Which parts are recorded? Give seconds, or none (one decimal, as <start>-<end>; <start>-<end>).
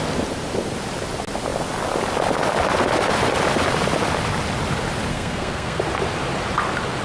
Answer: 0.0-5.1; 5.8-7.0